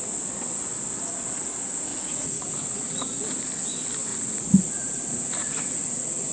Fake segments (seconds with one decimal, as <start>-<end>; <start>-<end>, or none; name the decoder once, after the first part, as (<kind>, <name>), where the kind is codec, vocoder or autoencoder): 1.9-3.0 (vocoder, Vocos); 4.1-6.3